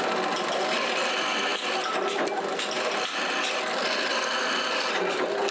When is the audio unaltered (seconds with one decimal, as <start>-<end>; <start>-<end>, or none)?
0.0-5.5